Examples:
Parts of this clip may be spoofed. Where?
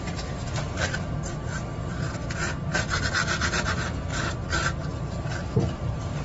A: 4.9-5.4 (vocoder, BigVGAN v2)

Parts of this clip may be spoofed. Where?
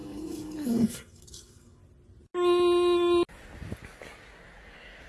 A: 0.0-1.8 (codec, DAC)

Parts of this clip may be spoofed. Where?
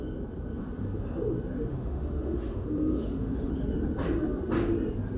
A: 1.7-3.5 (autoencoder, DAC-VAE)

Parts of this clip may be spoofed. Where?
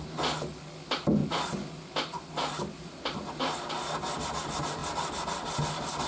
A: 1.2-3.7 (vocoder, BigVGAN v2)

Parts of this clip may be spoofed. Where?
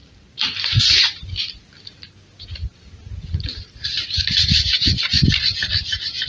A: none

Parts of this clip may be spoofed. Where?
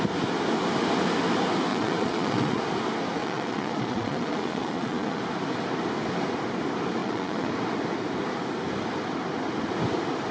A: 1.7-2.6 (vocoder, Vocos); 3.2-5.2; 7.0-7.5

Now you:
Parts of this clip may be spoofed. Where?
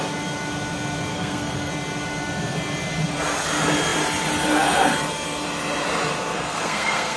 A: 1.1-1.7 (codec, SNAC); 6.3-7.2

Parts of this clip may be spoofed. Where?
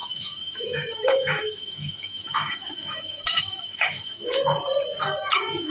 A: 0.0-4.4 (autoencoder, DAC-VAE); 5.2-5.7